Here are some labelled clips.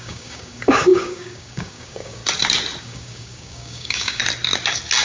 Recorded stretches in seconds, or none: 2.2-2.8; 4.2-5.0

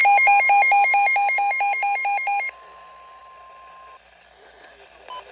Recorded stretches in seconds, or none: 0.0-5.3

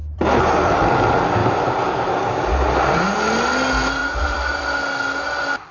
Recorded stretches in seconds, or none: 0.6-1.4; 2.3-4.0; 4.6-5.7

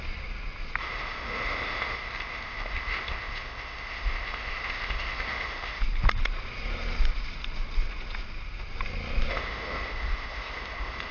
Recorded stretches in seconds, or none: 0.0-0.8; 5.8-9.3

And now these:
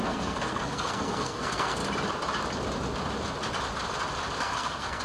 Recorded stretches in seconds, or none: 1.8-4.4

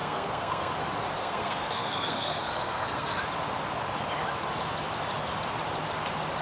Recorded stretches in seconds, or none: 0.7-1.2; 3.2-6.4

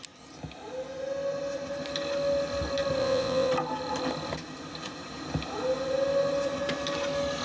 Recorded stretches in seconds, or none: 0.0-3.0; 3.5-7.4

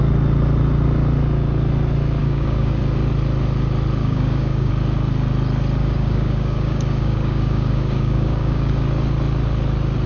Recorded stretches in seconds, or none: 0.0-2.2; 2.8-4.0; 4.7-5.8; 8.7-10.1